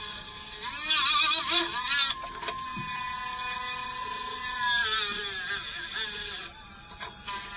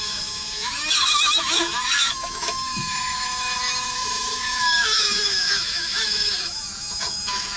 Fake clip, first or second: second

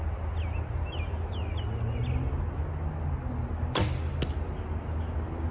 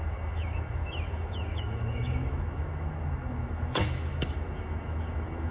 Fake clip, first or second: second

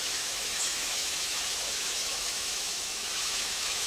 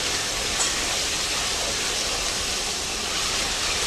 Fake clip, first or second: first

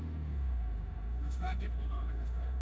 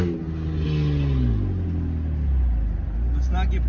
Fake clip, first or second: first